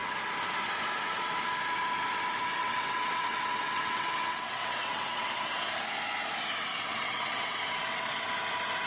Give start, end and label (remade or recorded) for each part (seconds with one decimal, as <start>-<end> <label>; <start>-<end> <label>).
0.0-2.6 recorded; 2.6-5.7 remade; 5.7-6.7 recorded; 6.7-8.3 remade; 8.3-8.9 recorded